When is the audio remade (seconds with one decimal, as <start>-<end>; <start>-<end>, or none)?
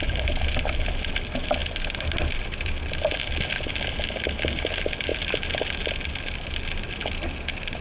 none